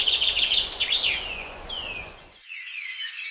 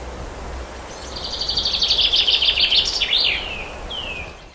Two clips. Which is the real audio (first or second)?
second